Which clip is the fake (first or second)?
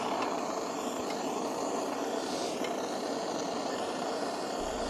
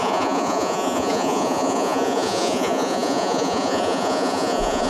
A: second